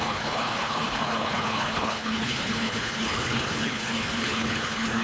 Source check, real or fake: fake